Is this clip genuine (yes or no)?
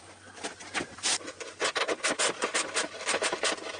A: yes